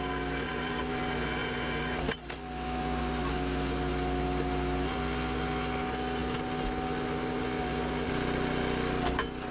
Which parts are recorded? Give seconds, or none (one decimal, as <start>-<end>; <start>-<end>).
0.0-9.5